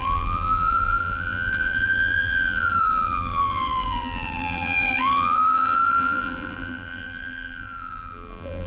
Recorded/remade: remade